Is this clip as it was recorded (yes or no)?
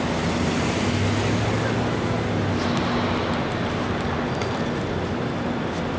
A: yes